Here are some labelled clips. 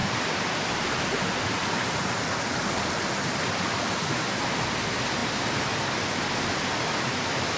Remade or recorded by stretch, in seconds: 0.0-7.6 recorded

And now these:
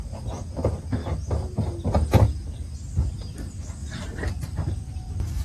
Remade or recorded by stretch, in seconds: 0.0-3.8 recorded; 3.8-4.9 remade; 4.9-5.4 recorded